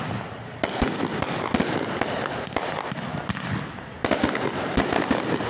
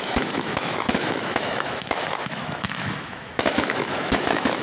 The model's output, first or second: second